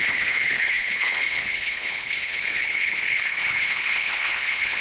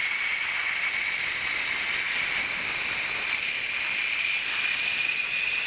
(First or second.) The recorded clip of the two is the second